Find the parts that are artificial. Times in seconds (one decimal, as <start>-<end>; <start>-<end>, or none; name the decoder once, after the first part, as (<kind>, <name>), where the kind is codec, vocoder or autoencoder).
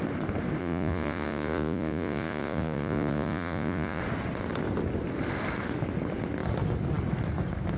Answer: 0.6-4.0 (vocoder, Vocos)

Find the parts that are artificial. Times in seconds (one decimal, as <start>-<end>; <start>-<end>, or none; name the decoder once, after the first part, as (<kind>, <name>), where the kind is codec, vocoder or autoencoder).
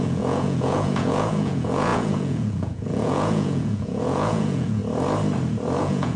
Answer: 0.0-4.8 (vocoder, Vocos); 5.8-6.2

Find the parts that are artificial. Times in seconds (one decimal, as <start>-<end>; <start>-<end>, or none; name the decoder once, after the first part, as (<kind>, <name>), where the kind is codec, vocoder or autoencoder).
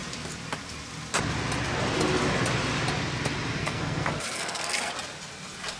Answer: 3.6-4.9 (codec, SNAC)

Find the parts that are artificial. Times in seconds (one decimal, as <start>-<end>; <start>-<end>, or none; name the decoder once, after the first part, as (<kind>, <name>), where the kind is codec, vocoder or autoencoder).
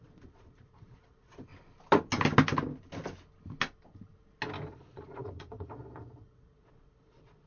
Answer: 0.0-1.5 (vocoder, Vocos); 4.7-7.5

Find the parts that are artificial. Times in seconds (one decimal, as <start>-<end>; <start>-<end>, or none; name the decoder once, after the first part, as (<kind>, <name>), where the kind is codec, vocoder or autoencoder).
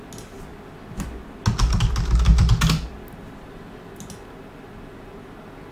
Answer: 2.3-2.9 (vocoder, BigVGAN v2)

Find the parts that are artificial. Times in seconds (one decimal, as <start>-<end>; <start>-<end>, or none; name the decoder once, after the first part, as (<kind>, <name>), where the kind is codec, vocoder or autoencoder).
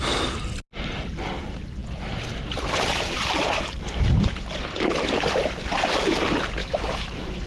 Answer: 6.6-7.5 (autoencoder, DAC-VAE)